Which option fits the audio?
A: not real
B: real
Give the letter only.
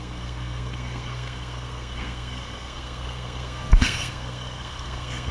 A